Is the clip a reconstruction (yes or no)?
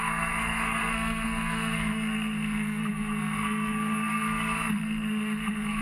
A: yes